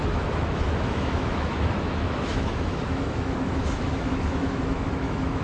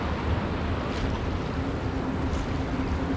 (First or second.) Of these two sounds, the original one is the second